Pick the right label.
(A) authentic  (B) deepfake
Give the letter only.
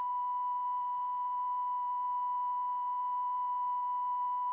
A